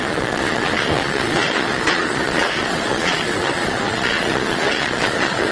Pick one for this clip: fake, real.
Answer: fake